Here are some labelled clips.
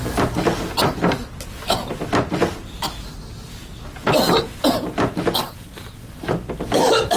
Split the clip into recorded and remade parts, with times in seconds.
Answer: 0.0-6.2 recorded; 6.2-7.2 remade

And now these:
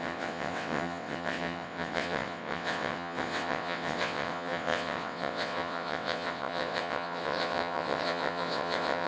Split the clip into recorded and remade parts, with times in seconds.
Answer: 0.0-9.1 remade

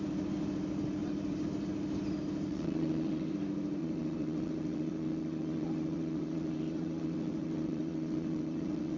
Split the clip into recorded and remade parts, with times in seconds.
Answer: 0.0-2.5 recorded; 2.5-3.3 remade; 3.3-3.8 recorded; 3.8-9.0 remade

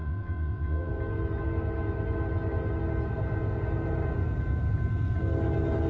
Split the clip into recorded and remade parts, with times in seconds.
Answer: 0.0-0.9 remade; 0.9-5.9 recorded

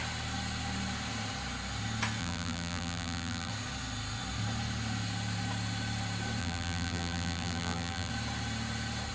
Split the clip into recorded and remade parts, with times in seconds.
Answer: 0.0-2.2 recorded; 2.2-3.5 remade; 3.5-6.4 recorded; 6.4-8.1 remade; 8.1-9.1 recorded

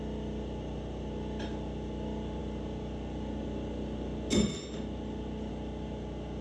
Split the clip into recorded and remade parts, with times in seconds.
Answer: 0.0-6.4 recorded

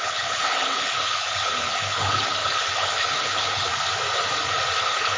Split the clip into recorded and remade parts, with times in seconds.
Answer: 0.0-3.7 remade; 3.7-4.8 recorded; 4.8-5.2 remade